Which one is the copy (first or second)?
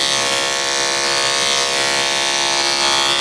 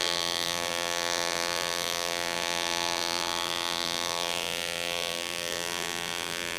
second